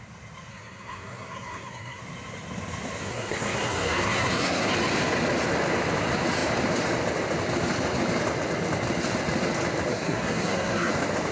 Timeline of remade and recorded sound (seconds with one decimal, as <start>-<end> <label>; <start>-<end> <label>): 0.0-0.5 recorded; 0.5-2.0 remade; 2.0-3.0 recorded; 3.0-4.7 remade; 4.7-9.9 recorded; 9.9-10.9 remade; 10.9-11.3 recorded